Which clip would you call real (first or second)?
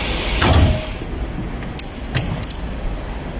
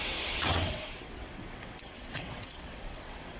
first